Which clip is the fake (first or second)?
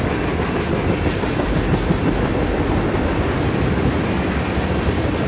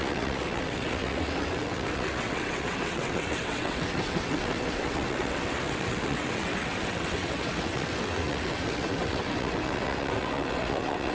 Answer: second